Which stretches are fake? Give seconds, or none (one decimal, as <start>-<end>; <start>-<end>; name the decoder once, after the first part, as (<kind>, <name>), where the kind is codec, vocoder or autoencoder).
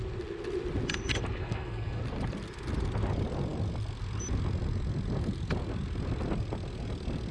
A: 1.4-2.0 (codec, SNAC)